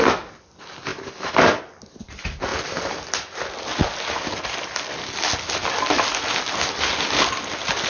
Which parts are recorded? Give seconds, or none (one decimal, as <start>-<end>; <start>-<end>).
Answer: 0.0-7.9